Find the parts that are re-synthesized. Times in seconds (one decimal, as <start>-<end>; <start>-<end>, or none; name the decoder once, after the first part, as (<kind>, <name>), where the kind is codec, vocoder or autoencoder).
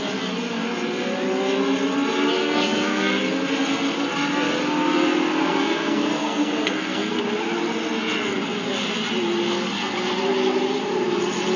2.4-3.2 (codec, SNAC); 5.4-7.2